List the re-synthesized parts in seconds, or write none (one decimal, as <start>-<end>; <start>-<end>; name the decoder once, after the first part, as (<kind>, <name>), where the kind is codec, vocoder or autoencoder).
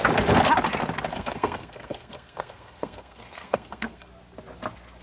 1.1-4.1 (codec, SNAC)